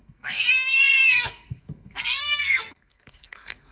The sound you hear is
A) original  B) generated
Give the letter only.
B